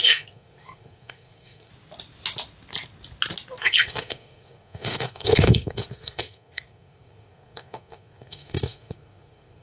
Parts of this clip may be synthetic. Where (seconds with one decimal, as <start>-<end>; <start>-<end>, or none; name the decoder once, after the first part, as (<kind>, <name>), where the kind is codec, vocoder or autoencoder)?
0.0-1.7 (codec, SNAC); 3.6-9.6